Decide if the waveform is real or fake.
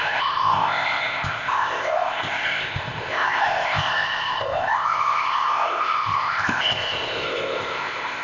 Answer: fake